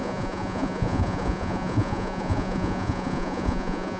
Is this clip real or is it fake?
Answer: fake